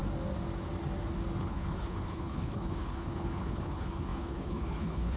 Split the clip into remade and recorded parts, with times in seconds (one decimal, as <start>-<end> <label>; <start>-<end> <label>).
0.0-1.4 recorded; 1.4-5.2 remade